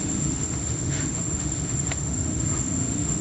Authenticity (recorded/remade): remade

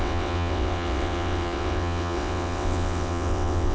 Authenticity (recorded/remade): remade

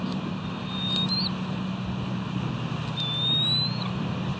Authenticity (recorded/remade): recorded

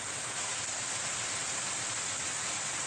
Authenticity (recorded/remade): recorded